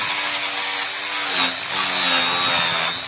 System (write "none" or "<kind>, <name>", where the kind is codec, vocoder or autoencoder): none